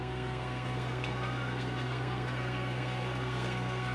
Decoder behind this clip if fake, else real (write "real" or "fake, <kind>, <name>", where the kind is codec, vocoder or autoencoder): fake, codec, SNAC